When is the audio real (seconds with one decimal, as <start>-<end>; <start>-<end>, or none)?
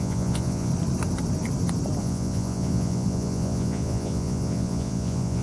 0.7-2.0